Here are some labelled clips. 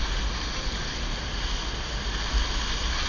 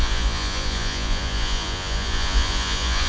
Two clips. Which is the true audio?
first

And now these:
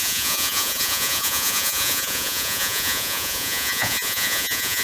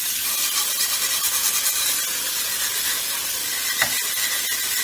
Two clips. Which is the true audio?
second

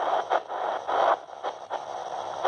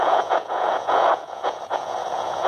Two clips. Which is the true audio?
first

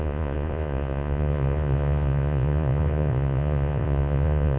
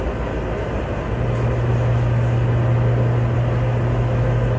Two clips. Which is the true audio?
second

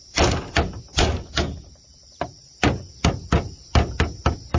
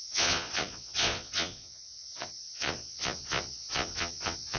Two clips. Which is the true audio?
first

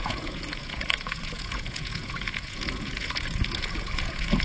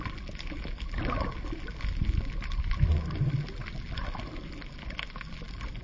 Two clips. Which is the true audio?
second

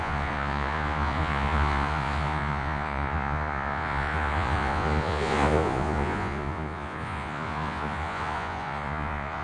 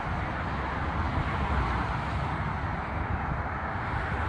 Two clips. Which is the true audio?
second